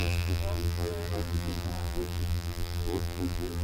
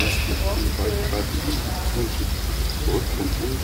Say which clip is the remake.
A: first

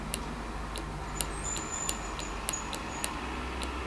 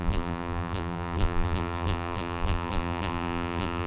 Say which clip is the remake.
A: second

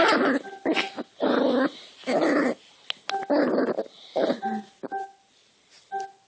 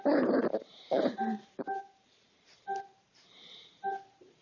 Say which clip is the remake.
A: second